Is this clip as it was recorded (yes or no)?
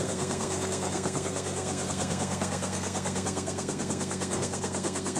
no